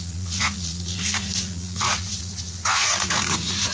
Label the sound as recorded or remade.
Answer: remade